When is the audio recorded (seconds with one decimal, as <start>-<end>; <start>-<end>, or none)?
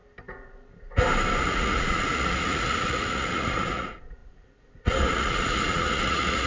0.0-1.4